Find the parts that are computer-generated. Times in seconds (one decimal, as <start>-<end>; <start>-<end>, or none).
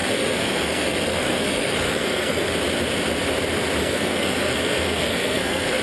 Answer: 0.0-2.5; 3.8-5.8